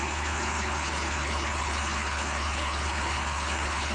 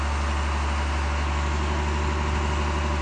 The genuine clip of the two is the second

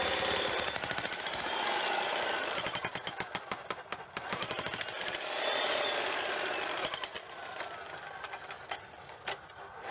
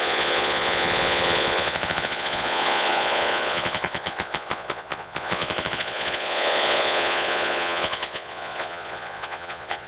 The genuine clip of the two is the first